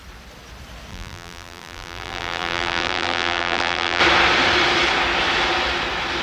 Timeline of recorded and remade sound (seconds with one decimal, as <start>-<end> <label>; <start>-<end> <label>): 0.0-0.9 recorded; 0.9-4.0 remade; 4.0-6.2 recorded